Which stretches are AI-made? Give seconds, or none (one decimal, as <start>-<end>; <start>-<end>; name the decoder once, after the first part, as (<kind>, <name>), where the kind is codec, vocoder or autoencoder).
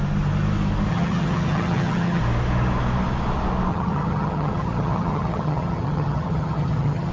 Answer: 0.9-2.2 (vocoder, HiFi-GAN); 3.7-7.1